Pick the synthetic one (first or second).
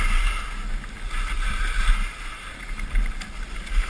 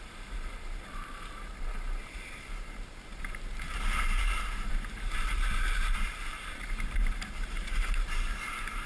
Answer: second